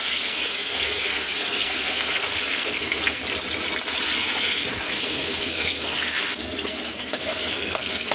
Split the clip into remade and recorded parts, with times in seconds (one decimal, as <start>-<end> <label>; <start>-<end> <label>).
0.0-3.2 remade; 3.2-4.2 recorded; 4.2-8.1 remade